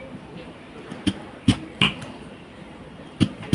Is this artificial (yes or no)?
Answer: no